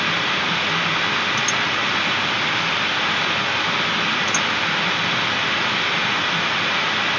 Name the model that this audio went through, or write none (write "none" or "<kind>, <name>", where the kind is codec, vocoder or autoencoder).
none